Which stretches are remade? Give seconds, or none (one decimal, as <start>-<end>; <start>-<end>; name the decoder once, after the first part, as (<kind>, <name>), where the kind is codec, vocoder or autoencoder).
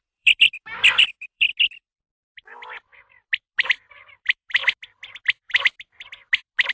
0.0-1.5 (vocoder, BigVGAN v2); 3.9-4.6